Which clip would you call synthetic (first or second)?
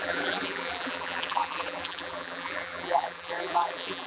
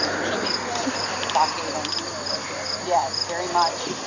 first